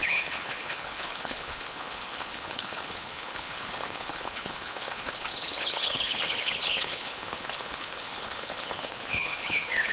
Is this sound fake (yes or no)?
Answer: yes